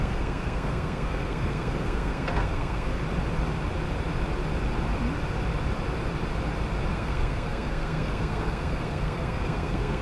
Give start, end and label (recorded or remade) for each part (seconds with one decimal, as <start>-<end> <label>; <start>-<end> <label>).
0.0-3.0 remade; 3.0-6.9 recorded; 6.9-10.0 remade